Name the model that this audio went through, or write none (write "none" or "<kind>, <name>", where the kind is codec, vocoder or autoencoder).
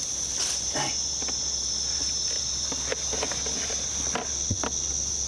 none